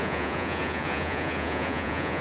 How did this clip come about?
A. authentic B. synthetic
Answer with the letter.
B